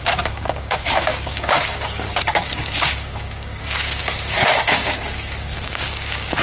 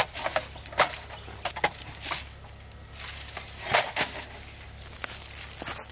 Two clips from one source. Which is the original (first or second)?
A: second